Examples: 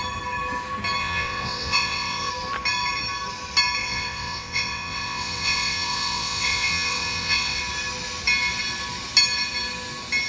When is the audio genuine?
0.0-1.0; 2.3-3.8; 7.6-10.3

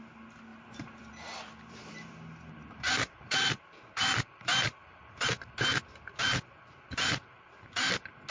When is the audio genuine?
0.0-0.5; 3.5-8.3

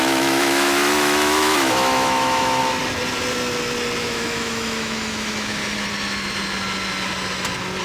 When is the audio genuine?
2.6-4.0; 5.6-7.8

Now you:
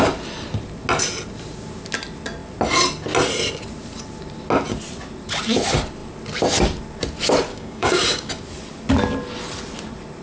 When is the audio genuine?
0.0-7.5; 8.3-10.2